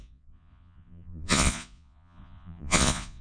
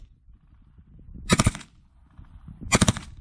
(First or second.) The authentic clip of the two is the second